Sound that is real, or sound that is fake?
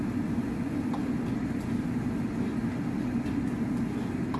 real